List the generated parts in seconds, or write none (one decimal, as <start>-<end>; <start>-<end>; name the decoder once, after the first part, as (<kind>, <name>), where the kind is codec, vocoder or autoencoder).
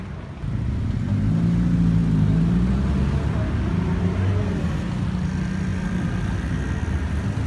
none